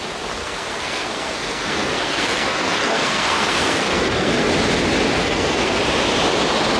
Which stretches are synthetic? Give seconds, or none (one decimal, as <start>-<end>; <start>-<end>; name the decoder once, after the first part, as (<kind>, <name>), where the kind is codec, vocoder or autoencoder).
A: 0.4-4.5 (codec, SNAC); 5.2-5.8